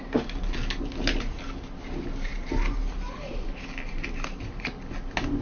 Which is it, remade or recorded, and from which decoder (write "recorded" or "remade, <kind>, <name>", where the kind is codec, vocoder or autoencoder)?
recorded